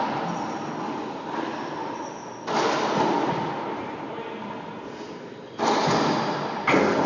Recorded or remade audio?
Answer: recorded